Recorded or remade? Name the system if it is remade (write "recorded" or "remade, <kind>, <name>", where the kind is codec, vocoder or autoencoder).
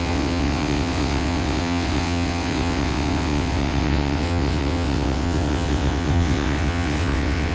remade, vocoder, WaveNeXt